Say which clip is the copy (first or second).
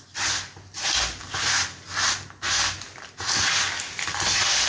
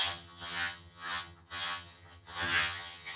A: second